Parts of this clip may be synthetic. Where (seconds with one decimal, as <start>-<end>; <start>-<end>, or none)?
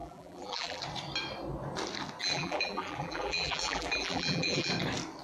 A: 0.0-0.8; 2.2-4.7